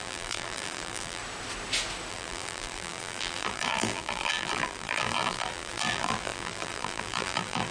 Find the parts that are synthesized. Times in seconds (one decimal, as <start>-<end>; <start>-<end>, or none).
0.0-1.2; 2.1-7.7